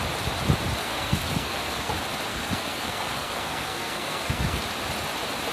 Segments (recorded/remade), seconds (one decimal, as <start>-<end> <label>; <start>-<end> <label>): 0.0-0.8 recorded; 0.8-1.9 remade; 1.9-2.3 recorded; 2.3-4.6 remade; 4.6-5.5 recorded